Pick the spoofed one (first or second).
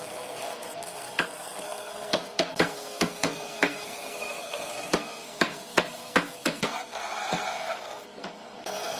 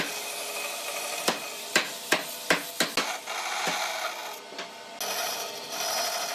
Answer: first